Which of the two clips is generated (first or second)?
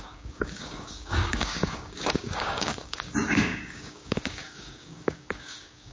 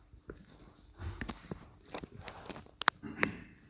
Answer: first